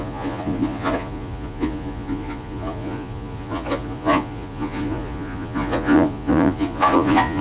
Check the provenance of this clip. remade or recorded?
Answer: remade